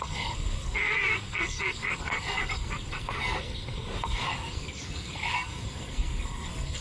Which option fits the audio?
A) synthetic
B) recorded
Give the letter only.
A